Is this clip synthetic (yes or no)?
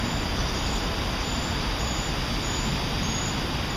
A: yes